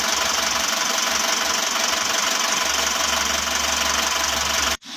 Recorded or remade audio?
recorded